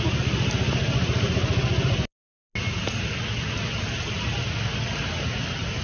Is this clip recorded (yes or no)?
yes